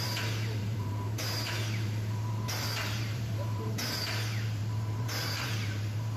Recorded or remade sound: remade